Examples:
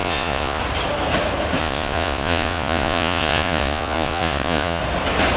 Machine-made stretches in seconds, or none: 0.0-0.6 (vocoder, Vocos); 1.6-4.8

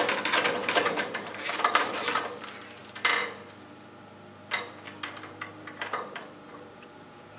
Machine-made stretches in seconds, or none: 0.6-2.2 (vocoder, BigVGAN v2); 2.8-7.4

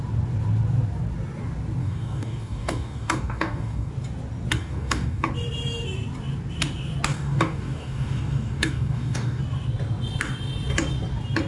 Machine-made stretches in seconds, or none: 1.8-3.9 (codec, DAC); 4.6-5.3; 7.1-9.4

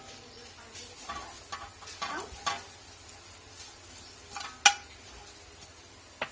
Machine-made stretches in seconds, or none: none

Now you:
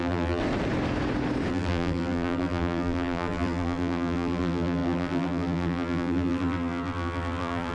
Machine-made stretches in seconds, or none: 0.0-0.4 (vocoder, BigVGAN v2); 1.5-7.7